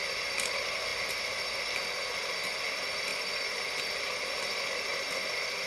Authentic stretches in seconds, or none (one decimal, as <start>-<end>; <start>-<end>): 0.0-3.1; 4.3-4.9